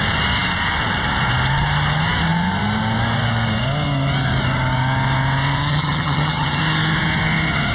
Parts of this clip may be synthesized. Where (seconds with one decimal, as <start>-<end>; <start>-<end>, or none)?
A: 5.7-6.6